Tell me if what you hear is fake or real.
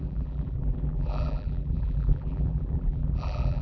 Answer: fake